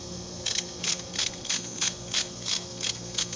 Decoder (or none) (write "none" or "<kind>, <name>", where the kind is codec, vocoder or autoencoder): codec, SNAC